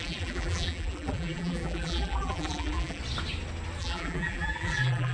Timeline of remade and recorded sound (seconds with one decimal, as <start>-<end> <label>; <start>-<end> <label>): 0.0-3.0 remade; 3.0-3.8 recorded; 3.8-5.1 remade